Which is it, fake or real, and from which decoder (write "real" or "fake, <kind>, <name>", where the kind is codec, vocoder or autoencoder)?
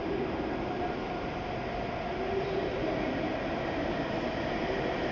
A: real